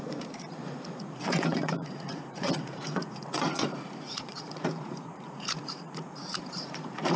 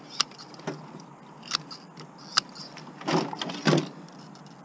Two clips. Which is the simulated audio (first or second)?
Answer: first